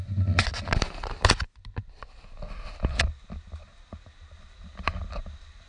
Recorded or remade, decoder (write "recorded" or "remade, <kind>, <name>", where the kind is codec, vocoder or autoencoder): recorded